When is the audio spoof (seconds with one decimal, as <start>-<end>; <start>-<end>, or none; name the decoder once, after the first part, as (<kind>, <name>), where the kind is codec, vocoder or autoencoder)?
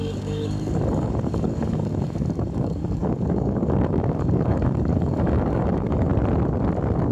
0.0-6.1 (codec, DAC)